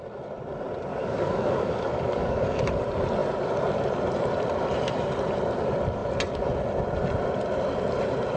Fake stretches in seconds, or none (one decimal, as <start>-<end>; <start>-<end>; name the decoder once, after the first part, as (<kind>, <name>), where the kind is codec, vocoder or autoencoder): 0.9-2.6 (codec, DAC)